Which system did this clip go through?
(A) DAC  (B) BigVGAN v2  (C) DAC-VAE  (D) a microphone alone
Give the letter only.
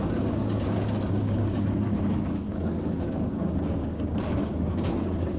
A